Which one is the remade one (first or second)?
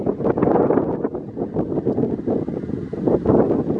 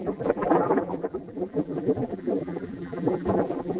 second